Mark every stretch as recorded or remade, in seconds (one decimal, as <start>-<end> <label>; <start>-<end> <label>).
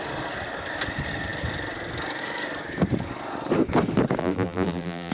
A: 0.0-4.2 recorded; 4.2-5.1 remade